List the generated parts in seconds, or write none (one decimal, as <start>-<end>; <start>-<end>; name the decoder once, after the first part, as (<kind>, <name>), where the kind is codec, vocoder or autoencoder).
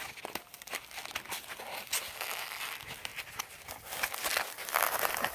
none